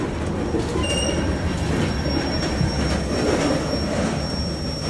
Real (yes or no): yes